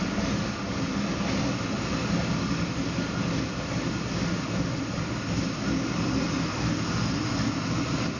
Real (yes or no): yes